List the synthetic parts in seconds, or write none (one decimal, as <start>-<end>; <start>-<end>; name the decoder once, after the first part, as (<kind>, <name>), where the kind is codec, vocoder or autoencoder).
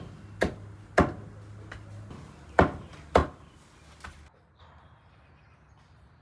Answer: none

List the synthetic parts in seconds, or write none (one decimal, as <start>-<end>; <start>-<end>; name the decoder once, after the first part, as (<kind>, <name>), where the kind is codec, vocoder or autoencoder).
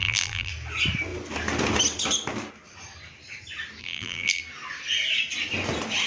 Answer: 0.0-0.5 (vocoder, BigVGAN v2); 3.8-4.4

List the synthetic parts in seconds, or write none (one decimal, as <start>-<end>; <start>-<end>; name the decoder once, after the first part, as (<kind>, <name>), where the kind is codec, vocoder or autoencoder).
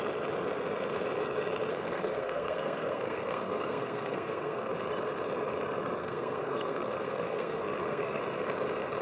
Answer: 1.7-4.7 (codec, SNAC); 6.0-8.2